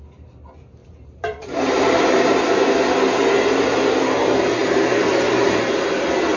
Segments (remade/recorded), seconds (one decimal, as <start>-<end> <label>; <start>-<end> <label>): 0.0-0.8 recorded; 0.8-2.4 remade; 2.4-4.6 recorded; 4.6-5.6 remade; 5.6-6.4 recorded